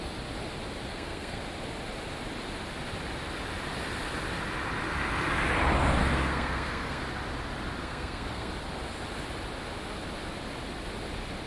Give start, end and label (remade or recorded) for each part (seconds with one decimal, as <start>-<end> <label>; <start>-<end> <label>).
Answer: 0.0-0.9 recorded; 0.9-1.4 remade; 1.4-6.0 recorded; 6.0-7.0 remade; 7.0-7.8 recorded; 7.8-8.5 remade; 8.5-11.5 recorded